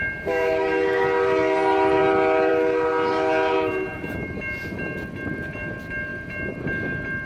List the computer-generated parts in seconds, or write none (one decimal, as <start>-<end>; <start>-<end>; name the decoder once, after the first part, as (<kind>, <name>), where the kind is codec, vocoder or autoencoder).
none